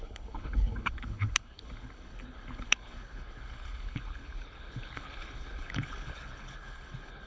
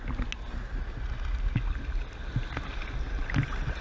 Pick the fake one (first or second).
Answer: first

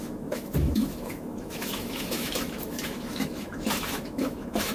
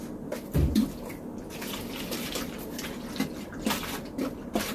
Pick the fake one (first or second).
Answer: first